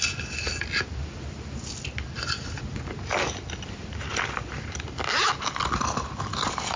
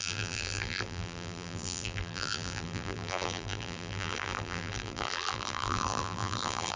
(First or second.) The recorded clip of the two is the first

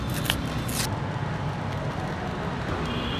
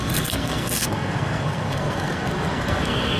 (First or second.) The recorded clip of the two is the first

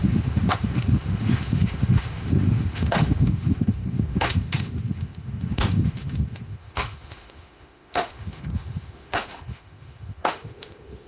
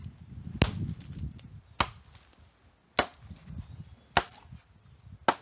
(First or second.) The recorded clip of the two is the second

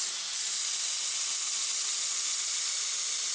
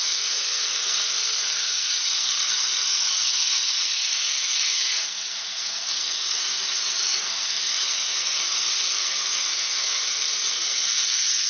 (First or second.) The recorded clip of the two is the first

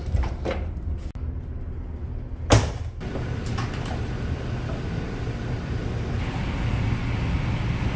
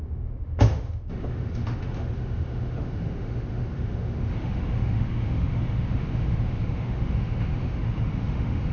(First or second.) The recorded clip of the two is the first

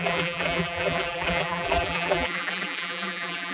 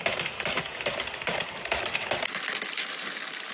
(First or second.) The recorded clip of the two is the second